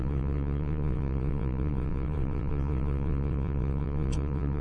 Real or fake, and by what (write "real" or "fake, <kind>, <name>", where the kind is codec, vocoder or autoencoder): fake, vocoder, WaveNeXt